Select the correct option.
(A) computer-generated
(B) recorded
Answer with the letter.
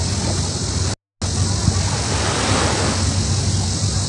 B